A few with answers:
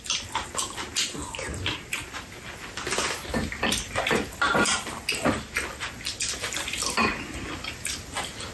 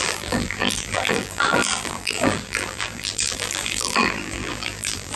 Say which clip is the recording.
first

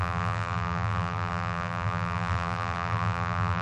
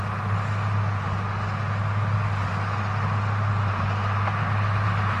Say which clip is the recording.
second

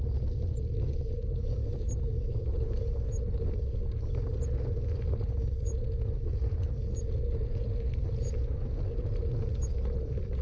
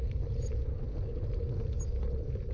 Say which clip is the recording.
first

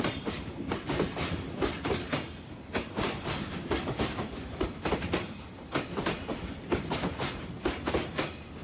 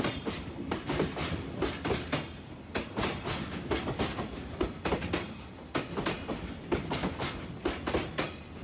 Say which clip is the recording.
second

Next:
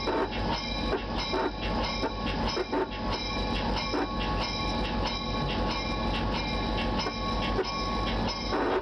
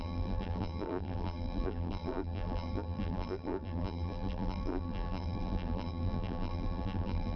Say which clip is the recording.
first